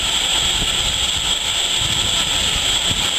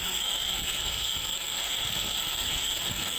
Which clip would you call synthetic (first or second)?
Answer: second